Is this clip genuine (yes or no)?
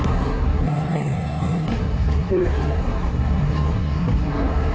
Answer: no